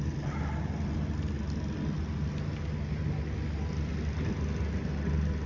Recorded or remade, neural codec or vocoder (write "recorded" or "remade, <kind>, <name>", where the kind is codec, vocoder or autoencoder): recorded